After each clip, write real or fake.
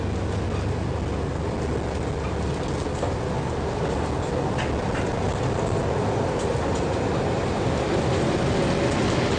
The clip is real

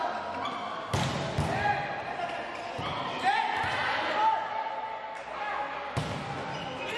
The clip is real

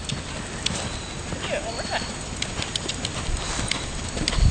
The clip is real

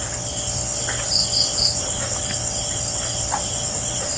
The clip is real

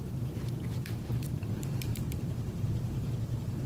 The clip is fake